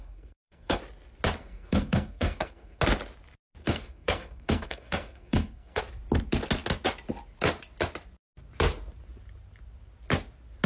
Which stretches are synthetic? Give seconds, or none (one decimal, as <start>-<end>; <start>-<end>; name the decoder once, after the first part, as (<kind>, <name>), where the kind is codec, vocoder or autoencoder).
0.0-0.8 (codec, SNAC); 1.4-2.8; 3.6-5.8